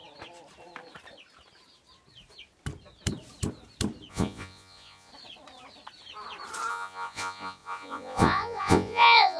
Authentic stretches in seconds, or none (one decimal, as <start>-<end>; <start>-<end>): 0.0-4.1; 5.1-6.7